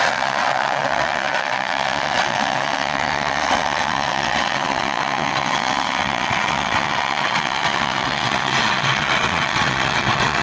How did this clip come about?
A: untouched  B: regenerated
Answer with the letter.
B